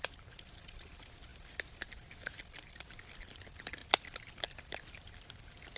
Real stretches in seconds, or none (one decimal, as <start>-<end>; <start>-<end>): 0.0-5.8